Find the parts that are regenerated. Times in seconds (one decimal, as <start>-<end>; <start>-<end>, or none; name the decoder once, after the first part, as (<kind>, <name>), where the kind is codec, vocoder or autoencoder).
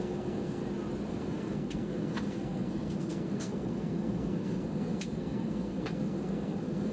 0.0-0.6 (codec, SNAC); 1.1-6.9